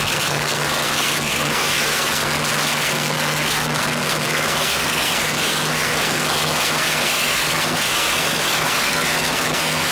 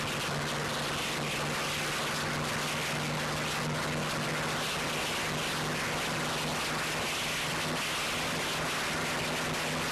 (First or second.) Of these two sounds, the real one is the second